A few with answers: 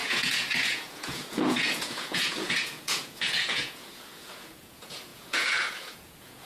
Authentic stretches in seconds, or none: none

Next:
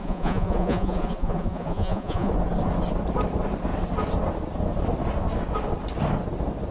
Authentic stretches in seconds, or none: 2.3-6.7

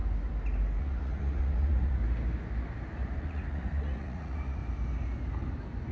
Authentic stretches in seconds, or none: 0.0-0.8; 2.0-3.2; 4.6-5.9

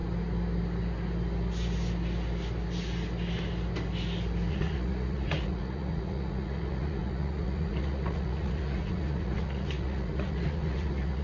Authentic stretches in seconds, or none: 0.0-4.5

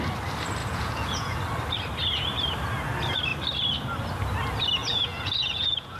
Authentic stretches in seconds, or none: 0.0-0.6; 1.4-4.8

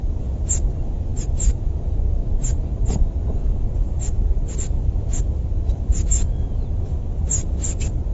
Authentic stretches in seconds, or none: 0.0-1.1; 2.3-3.4; 7.2-8.1

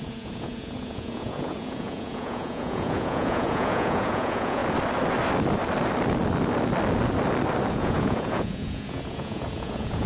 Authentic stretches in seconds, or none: 4.6-7.7

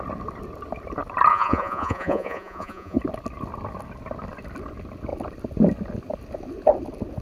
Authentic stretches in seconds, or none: 0.0-1.3; 3.0-7.2